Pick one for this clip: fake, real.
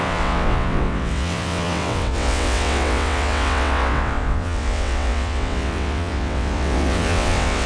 fake